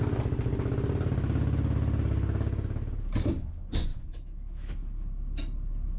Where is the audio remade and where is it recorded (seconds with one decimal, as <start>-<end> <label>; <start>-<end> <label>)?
0.0-3.9 recorded; 3.9-4.7 remade; 4.7-6.0 recorded